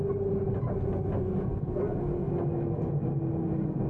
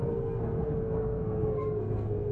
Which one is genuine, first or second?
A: first